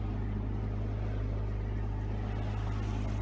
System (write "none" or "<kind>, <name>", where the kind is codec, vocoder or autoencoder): none